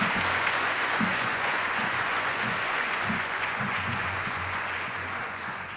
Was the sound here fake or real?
fake